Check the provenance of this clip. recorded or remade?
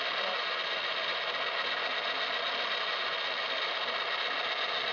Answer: recorded